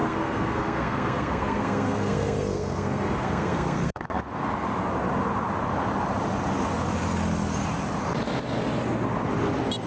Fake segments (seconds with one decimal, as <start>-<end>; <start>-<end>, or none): 0.0-4.2